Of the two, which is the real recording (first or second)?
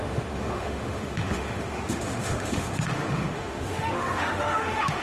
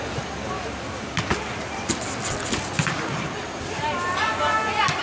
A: second